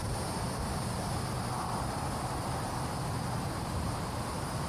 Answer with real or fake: fake